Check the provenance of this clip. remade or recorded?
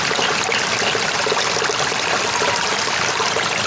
recorded